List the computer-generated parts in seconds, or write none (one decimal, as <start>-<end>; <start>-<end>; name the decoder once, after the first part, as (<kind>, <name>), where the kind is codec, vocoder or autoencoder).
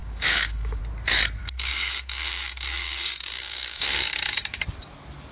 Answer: 0.0-0.8 (codec, DAC); 1.4-4.6